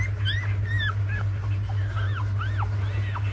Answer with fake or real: real